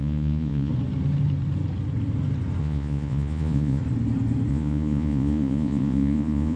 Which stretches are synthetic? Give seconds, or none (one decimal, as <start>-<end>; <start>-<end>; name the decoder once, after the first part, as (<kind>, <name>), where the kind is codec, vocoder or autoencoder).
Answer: 0.0-0.7 (vocoder, Vocos); 2.6-3.8; 4.5-6.6